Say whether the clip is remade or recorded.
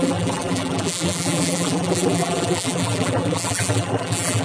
remade